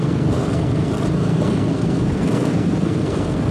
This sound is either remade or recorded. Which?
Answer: remade